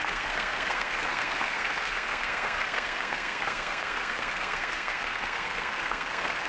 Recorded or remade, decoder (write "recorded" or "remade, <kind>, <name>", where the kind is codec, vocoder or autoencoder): remade, codec, SNAC